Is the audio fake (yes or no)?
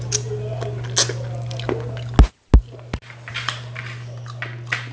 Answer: no